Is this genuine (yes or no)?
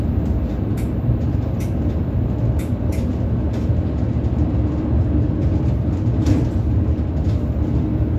yes